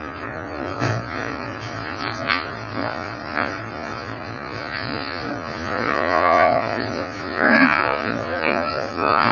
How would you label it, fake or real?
fake